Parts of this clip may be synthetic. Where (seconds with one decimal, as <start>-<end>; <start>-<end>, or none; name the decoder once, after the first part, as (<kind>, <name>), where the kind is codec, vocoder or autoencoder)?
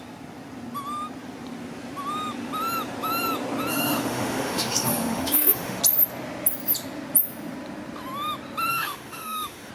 3.7-5.8 (autoencoder, DAC-VAE); 8.7-9.7